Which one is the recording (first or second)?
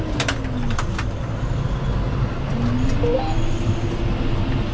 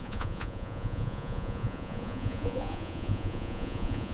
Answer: first